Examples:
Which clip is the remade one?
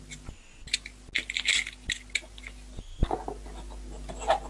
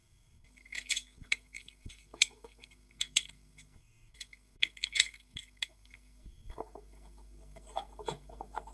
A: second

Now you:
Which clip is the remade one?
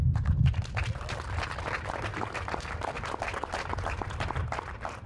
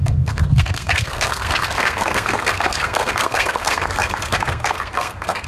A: second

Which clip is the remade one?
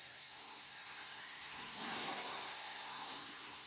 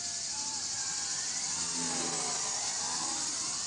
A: first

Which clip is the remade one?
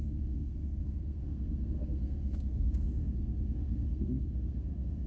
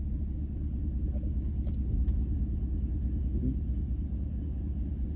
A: first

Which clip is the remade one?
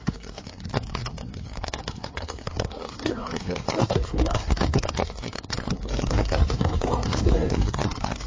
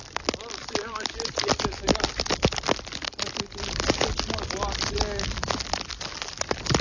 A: first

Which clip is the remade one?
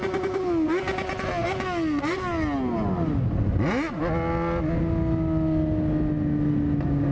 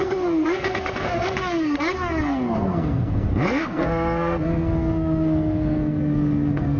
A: second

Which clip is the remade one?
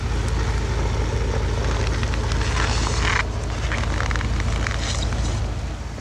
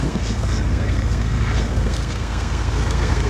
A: second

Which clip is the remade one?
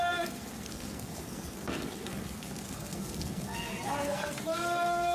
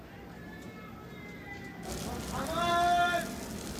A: first